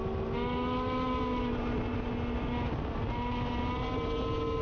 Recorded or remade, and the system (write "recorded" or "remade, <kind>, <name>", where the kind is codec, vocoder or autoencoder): recorded